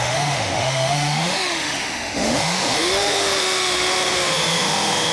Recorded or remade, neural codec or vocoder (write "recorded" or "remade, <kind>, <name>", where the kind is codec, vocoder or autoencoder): remade, autoencoder, DAC-VAE